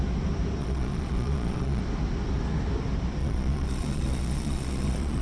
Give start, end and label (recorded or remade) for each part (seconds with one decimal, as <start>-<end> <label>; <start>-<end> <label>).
0.0-0.6 recorded; 0.6-1.8 remade; 1.8-3.2 recorded; 3.2-5.2 remade